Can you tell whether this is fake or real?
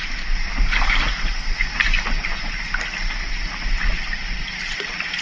real